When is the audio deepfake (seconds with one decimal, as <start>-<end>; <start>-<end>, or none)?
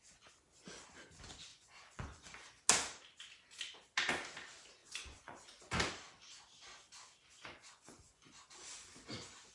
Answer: 1.5-2.6; 4.8-5.6; 7.3-8.3